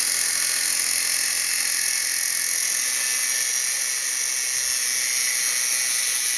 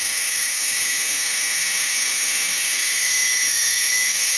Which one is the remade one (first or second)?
second